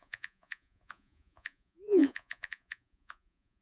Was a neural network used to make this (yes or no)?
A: yes